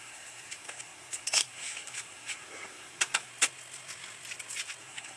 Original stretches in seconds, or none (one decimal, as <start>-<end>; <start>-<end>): 3.3-4.8